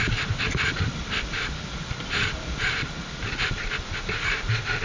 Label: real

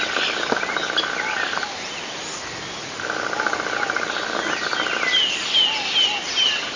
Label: real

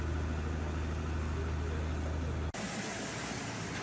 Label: real